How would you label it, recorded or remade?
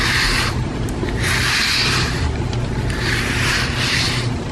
remade